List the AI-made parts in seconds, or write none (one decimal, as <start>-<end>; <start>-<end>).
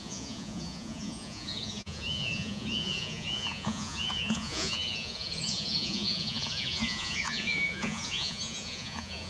0.0-9.3